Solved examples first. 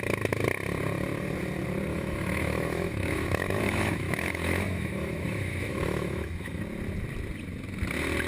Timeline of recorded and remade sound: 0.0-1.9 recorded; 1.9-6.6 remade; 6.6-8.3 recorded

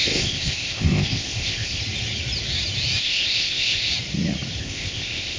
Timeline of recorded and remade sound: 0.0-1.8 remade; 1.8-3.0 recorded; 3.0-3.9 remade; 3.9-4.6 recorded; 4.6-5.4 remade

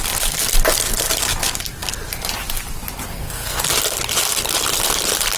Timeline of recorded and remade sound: 0.0-3.1 recorded; 3.1-3.6 remade; 3.6-5.4 recorded

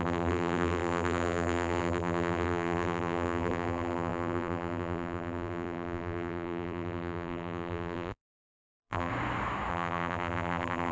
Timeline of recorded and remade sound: 0.0-9.1 remade; 9.1-9.7 recorded; 9.7-10.9 remade

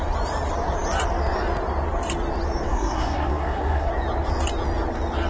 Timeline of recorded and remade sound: 0.0-2.7 recorded; 2.7-3.9 remade; 3.9-5.3 recorded

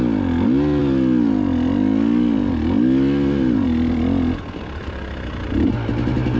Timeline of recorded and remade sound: 0.0-6.4 recorded